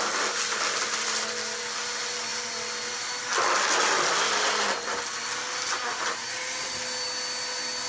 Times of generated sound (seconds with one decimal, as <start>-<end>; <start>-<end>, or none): none